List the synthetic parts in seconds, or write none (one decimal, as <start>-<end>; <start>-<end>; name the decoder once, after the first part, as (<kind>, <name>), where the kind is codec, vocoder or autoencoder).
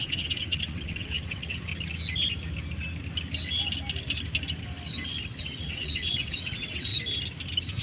0.0-1.7 (vocoder, WaveNeXt); 5.4-6.9